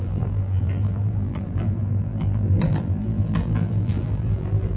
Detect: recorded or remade remade